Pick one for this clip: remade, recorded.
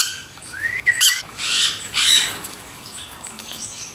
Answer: remade